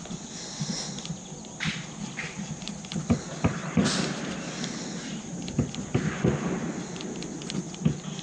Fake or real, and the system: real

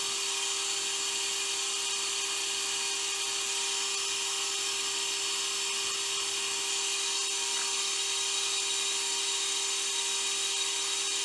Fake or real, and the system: real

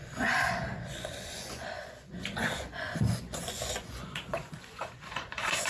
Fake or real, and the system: fake, vocoder, Vocos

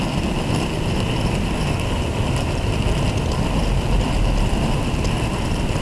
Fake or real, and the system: real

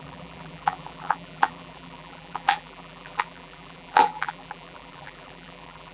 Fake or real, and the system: fake, vocoder, BigVGAN v2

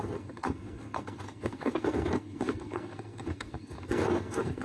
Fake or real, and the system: fake, codec, SNAC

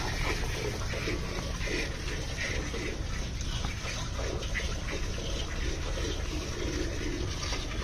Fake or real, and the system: real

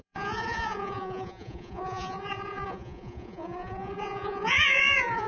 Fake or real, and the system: fake, vocoder, Vocos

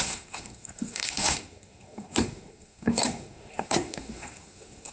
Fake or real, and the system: fake, codec, SNAC